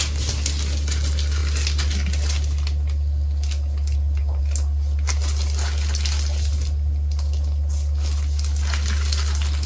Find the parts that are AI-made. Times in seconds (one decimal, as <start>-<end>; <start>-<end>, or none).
none